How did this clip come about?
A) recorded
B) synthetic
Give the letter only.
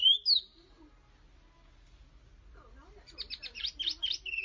A